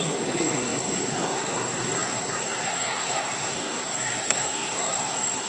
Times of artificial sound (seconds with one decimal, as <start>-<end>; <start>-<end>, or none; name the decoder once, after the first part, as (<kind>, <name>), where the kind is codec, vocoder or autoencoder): 0.0-5.5 (codec, SNAC)